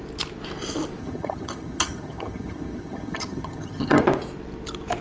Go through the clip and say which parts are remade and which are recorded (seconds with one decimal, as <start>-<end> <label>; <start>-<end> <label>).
0.0-1.0 recorded; 1.0-4.0 remade; 4.0-5.0 recorded